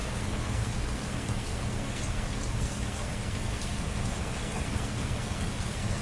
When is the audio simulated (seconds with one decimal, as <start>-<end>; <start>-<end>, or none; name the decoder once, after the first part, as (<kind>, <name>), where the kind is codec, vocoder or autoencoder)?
0.0-6.0 (codec, SNAC)